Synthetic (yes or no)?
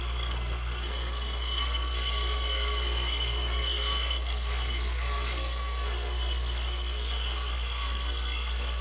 yes